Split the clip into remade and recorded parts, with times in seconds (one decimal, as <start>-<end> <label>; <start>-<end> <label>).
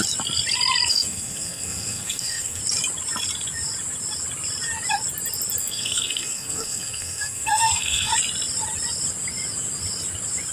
0.0-0.9 recorded; 0.9-2.6 remade; 2.6-5.6 recorded; 5.6-8.1 remade; 8.1-10.5 recorded